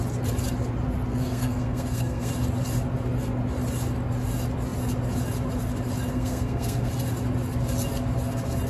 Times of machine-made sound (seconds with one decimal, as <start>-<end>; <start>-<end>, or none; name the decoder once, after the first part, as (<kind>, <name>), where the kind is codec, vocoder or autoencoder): 1.1-2.3 (codec, SNAC); 6.1-6.9

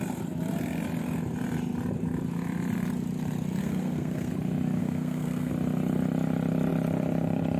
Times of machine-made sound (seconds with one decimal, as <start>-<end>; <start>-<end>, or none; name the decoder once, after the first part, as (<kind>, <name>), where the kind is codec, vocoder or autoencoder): 3.6-4.3 (codec, SNAC); 4.8-5.5

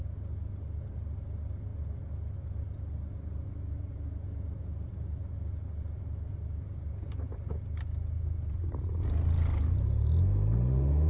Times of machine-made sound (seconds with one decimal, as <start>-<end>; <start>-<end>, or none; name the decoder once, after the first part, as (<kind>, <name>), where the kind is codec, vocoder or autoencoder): none

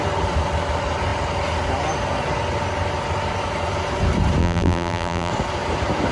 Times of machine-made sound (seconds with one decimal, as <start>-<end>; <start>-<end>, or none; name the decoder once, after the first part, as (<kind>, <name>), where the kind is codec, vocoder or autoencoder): 4.4-5.3 (vocoder, BigVGAN v2)

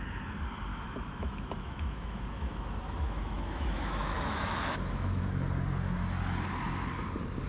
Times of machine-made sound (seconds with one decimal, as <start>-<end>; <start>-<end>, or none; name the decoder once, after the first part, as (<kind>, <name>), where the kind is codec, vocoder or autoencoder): 0.7-5.2 (autoencoder, DAC-VAE)

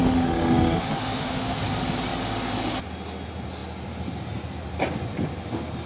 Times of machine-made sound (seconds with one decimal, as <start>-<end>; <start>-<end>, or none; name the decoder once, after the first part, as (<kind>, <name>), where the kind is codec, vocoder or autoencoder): 0.0-1.6 (autoencoder, DAC-VAE)

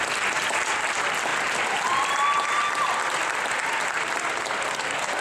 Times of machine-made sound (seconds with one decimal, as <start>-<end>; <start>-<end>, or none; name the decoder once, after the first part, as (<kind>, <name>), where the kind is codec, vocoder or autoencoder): none

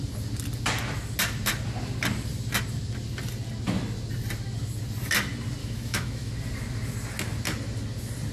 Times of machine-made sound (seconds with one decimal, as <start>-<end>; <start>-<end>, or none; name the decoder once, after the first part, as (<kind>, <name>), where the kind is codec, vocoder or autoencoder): 5.6-6.3 (autoencoder, DAC-VAE)